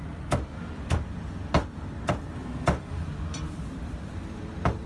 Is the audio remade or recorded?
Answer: remade